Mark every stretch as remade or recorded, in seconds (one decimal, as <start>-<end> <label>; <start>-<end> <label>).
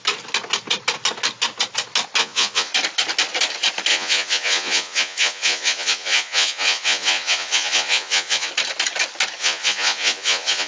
0.0-2.2 recorded; 2.2-2.7 remade; 2.7-3.9 recorded; 3.9-8.5 remade; 8.5-9.4 recorded; 9.4-10.7 remade